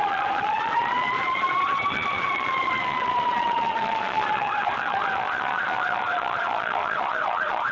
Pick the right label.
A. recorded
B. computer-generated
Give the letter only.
B